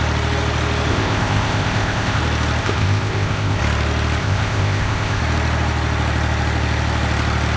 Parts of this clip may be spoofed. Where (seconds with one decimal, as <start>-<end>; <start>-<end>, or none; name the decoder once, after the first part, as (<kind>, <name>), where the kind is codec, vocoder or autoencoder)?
0.9-2.2 (codec, ZipCodec); 2.6-3.6; 4.2-5.2